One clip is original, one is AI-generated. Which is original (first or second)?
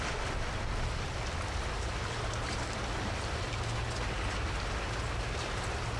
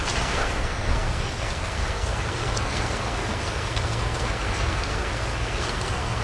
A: first